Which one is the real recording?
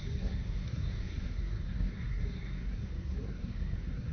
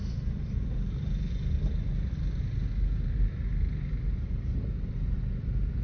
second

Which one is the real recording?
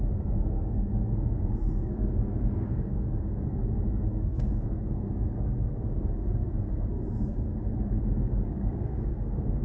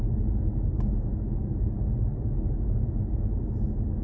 second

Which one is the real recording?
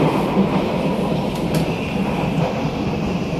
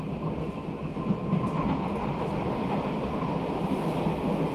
second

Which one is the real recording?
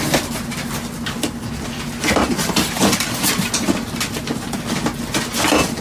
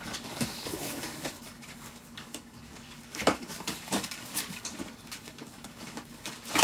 first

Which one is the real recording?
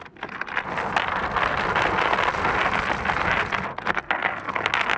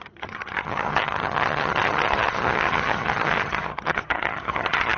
first